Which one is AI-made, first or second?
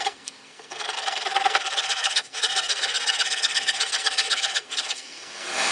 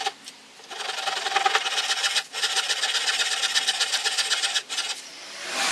first